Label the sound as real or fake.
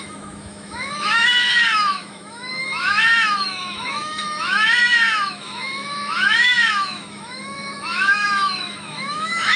fake